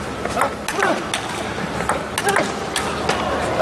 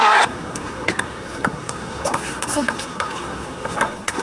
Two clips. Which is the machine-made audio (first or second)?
second